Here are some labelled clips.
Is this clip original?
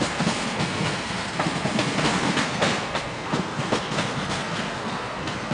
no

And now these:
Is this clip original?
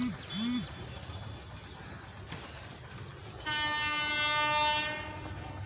yes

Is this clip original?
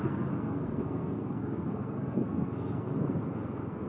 no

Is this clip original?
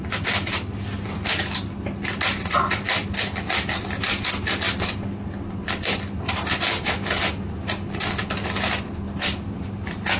yes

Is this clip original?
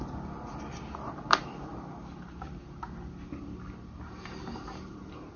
no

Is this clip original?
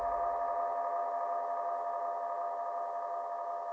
yes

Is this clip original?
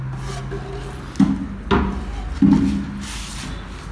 yes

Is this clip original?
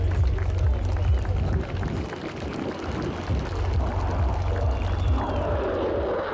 yes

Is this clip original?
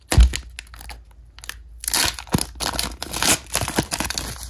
yes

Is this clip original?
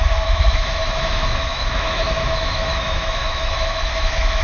no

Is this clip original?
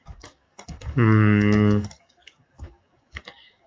no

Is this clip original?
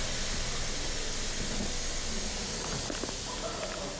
yes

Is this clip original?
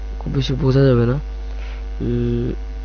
yes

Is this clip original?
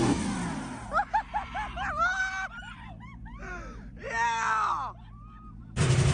no